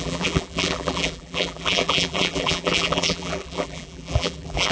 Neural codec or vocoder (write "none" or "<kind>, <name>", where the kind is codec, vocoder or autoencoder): vocoder, BigVGAN v2